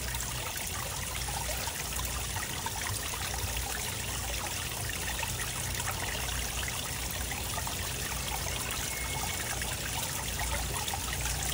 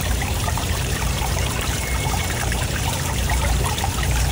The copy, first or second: second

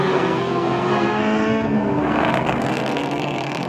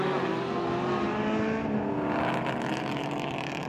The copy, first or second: first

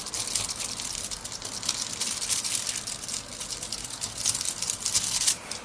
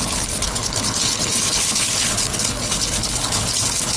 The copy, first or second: second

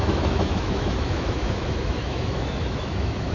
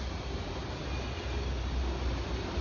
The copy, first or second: first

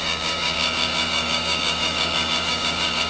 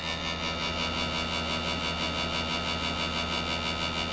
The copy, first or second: first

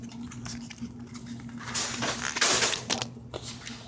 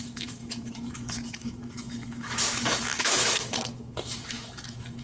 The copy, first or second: second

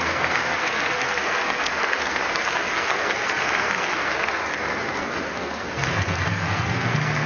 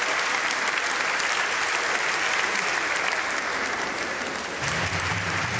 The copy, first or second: first